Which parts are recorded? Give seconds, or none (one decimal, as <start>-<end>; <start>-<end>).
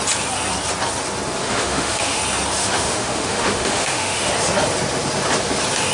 0.0-1.4; 2.2-2.6; 4.3-5.9